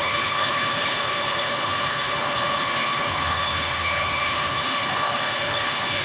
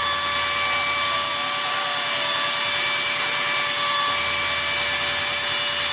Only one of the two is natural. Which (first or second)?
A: second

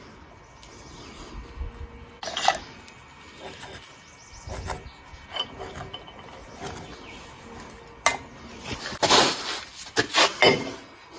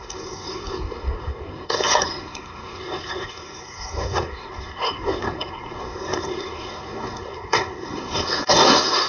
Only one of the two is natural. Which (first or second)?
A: first